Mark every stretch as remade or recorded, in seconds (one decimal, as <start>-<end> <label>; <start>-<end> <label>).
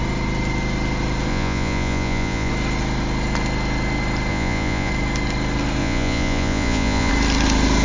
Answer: 0.0-1.3 recorded; 1.3-2.5 remade; 2.5-4.3 recorded; 4.3-4.9 remade; 4.9-5.8 recorded; 5.8-7.1 remade; 7.1-7.8 recorded